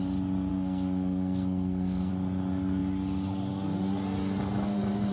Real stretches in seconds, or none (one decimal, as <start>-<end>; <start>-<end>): 0.0-0.5; 2.1-5.1